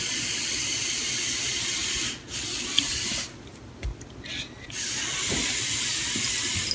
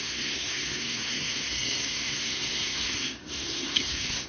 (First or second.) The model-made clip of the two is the second